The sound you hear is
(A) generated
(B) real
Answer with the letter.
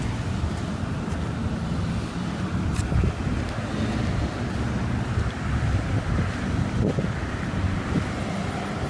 B